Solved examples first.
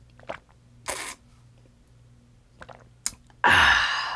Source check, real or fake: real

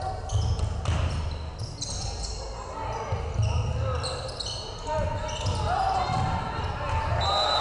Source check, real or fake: real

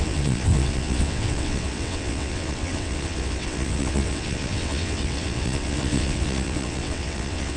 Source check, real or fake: fake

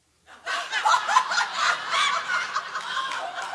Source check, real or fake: real